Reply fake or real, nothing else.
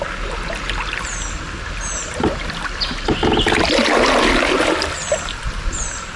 real